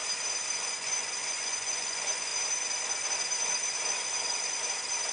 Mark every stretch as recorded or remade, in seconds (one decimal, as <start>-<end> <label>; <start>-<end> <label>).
0.0-0.5 recorded; 0.5-2.3 remade; 2.3-5.1 recorded